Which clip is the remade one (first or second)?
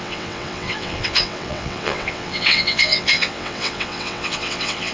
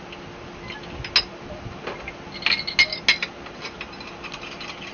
first